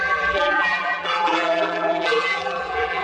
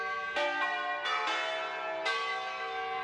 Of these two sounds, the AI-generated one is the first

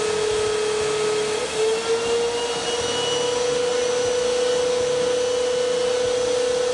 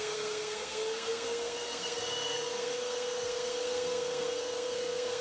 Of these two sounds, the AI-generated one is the second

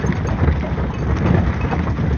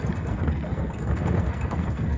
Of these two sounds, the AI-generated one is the second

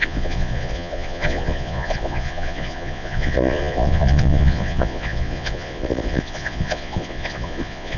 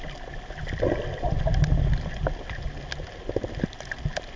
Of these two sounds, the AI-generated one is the first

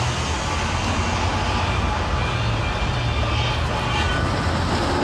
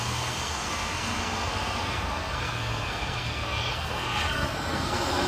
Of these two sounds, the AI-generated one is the second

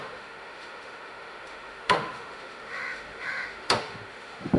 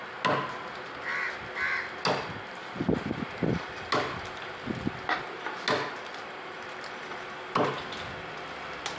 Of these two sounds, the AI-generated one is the first